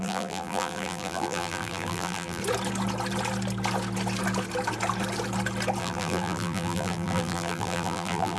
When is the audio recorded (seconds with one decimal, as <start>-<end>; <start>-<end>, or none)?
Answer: 2.4-5.8